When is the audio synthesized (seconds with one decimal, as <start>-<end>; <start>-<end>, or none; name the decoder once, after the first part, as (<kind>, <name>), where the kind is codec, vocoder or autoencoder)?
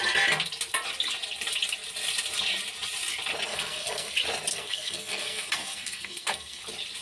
3.5-4.1 (codec, SNAC); 4.5-6.6